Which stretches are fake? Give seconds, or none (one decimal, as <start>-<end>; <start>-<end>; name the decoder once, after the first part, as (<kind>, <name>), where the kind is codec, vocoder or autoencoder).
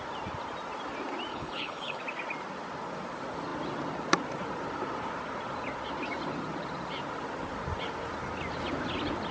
1.3-2.0 (codec, HILCodec)